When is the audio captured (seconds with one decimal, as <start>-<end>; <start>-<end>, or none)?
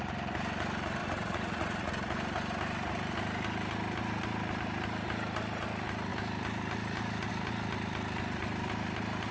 0.0-1.0; 1.9-9.3